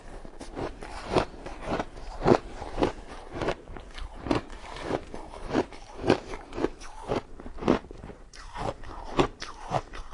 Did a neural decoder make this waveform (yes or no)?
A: yes